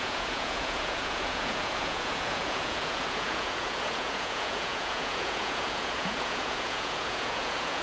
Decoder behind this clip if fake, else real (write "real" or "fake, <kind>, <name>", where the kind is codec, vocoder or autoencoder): fake, vocoder, Vocos